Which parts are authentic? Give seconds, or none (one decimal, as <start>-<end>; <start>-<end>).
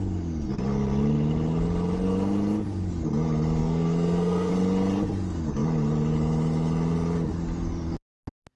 0.0-3.6; 4.5-8.6